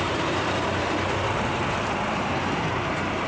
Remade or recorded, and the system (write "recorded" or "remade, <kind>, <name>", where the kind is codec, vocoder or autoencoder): remade, vocoder, BigVGAN v2